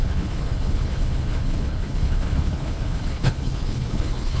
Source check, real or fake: fake